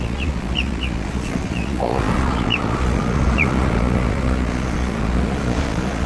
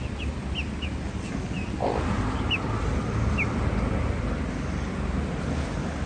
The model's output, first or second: first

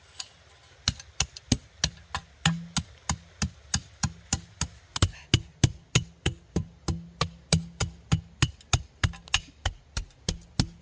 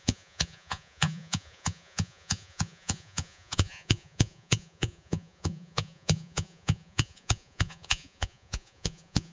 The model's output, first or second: second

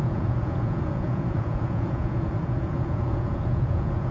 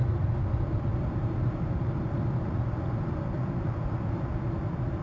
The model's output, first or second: first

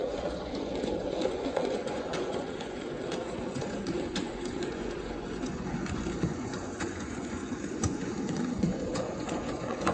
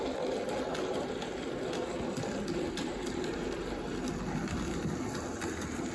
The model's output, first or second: first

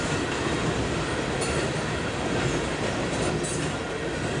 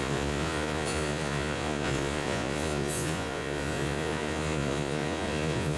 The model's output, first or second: second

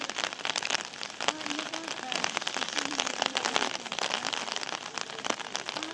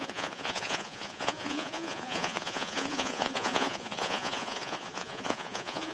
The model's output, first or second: second